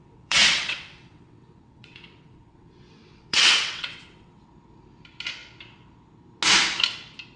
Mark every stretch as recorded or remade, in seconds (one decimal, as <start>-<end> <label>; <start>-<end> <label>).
0.0-4.4 remade; 4.4-7.4 recorded